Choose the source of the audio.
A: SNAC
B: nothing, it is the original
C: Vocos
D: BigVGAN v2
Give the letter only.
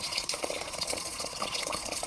C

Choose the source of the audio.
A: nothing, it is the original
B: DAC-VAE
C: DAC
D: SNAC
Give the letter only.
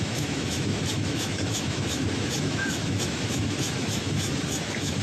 B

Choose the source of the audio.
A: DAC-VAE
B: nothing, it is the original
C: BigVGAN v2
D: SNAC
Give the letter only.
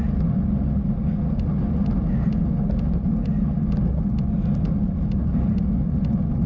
B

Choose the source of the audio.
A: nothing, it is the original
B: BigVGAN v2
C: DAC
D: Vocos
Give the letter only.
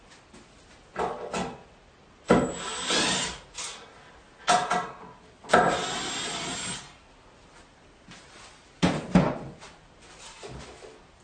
A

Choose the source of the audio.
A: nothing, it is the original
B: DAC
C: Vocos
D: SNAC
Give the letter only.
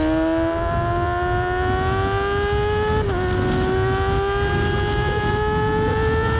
A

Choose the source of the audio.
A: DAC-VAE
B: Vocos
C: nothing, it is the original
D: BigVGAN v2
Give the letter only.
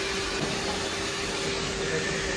C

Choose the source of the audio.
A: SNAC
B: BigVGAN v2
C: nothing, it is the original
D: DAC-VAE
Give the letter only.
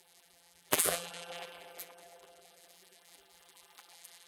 B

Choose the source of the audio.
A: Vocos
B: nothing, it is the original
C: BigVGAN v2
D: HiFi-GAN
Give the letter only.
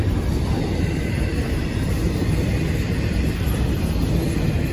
C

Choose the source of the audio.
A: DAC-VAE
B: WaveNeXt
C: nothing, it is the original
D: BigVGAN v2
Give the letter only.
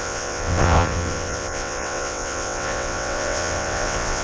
B